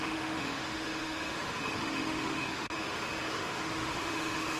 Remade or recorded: remade